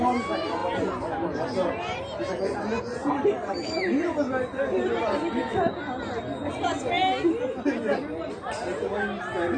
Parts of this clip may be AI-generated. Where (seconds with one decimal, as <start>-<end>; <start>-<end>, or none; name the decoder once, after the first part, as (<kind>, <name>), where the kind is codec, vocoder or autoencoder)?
none